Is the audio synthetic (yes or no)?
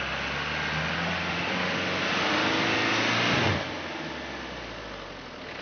no